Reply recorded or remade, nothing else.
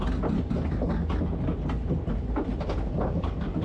recorded